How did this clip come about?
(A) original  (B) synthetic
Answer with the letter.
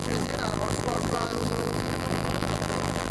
B